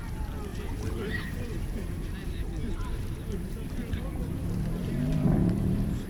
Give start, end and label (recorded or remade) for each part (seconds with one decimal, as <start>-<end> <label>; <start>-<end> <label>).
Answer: 0.0-0.5 recorded; 0.5-3.7 remade; 3.7-4.8 recorded; 4.8-6.1 remade